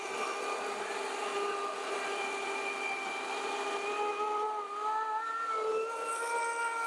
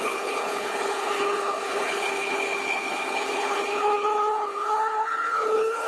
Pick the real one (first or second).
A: first